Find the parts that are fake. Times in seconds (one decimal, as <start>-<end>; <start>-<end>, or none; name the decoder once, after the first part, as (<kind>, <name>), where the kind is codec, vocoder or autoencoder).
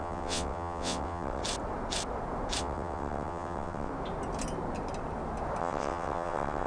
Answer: 0.0-1.4 (vocoder, WaveNeXt); 2.6-3.9; 5.6-6.7